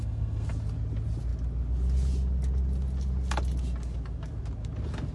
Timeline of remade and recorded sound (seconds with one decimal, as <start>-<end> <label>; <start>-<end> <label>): 0.0-0.5 remade; 0.5-5.1 recorded